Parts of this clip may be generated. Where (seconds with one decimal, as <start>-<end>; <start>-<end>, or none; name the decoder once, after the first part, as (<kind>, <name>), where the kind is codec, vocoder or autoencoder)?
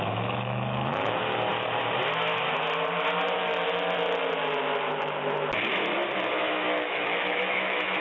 0.0-1.5 (autoencoder, DAC-VAE); 6.3-8.0